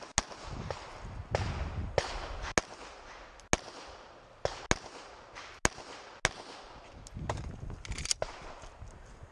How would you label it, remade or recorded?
recorded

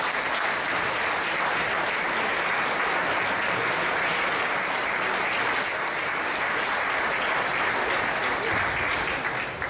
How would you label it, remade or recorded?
recorded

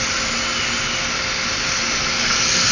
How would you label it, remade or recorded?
recorded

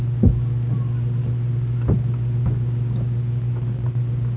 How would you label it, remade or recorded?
recorded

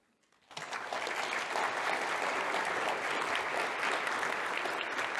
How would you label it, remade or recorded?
recorded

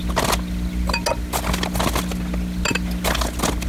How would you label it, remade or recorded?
recorded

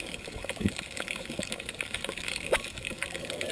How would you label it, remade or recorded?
remade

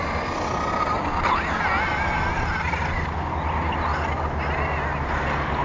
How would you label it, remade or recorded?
recorded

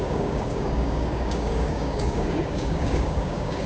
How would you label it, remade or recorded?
remade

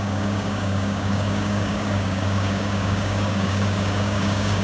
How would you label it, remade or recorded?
remade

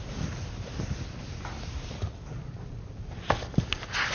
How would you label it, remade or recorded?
recorded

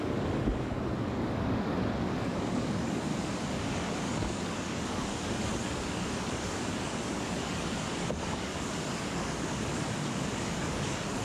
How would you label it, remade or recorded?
remade